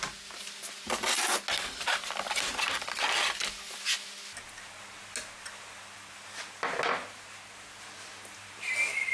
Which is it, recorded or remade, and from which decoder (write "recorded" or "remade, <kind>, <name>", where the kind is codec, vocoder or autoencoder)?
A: recorded